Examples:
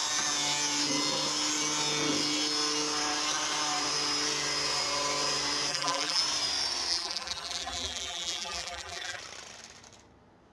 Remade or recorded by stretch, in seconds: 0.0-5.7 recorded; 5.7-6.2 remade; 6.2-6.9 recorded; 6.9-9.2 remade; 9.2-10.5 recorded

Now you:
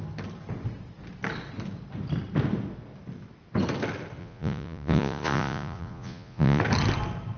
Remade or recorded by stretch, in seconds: 0.0-4.2 recorded; 4.2-6.6 remade; 6.6-7.4 recorded

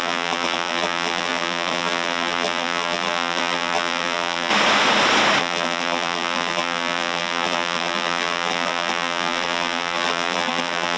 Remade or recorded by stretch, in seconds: 0.0-4.5 remade; 4.5-5.4 recorded; 5.4-11.0 remade

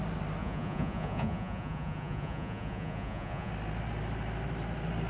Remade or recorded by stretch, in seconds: 0.0-0.4 recorded; 0.4-3.5 remade; 3.5-5.1 recorded

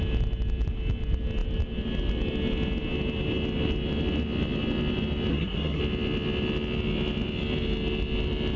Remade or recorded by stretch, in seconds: 0.0-5.3 recorded; 5.3-5.8 remade; 5.8-8.6 recorded